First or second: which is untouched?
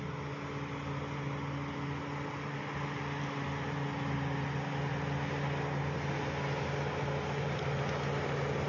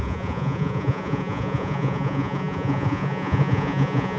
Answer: first